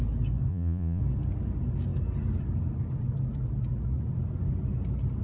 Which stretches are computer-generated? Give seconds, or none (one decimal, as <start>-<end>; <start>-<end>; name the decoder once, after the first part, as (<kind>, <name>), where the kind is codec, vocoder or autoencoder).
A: 0.5-1.0 (vocoder, Vocos)